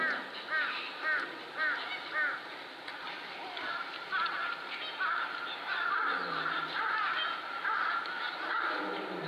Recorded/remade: recorded